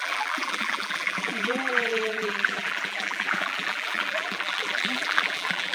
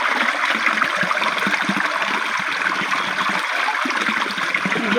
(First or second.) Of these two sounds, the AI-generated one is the first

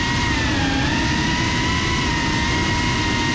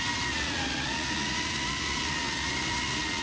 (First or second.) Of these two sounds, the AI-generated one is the second